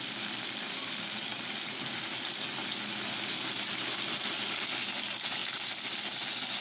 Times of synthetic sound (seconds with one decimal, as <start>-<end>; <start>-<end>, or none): none